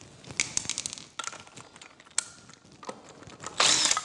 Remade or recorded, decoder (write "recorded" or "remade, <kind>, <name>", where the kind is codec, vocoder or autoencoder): recorded